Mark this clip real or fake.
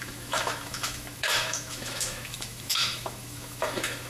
fake